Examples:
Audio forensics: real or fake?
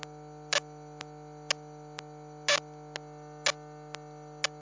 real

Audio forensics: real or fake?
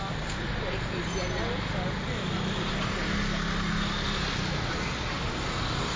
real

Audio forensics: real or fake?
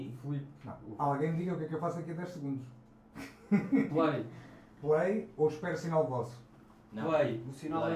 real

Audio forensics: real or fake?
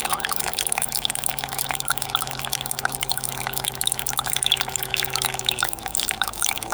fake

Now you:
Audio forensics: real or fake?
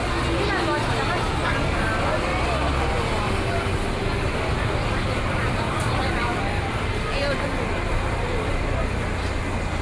real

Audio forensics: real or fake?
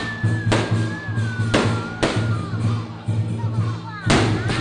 real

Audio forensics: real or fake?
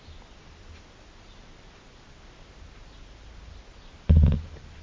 real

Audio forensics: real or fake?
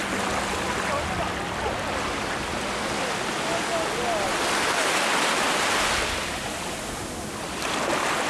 real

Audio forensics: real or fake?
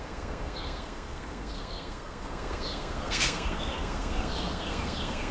fake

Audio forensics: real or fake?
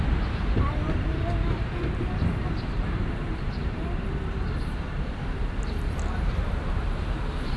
fake